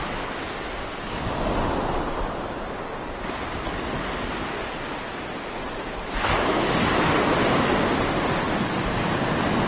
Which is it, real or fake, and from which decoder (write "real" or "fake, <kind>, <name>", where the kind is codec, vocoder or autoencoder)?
real